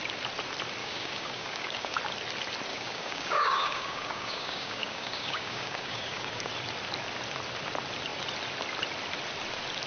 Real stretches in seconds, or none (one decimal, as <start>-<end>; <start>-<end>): 0.0-0.8; 2.0-2.7; 6.5-9.9